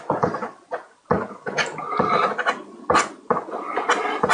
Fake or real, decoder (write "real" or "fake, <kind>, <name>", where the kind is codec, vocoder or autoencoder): real